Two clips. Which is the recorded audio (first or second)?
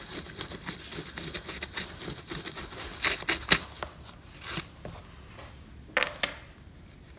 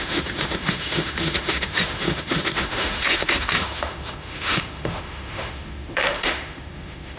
first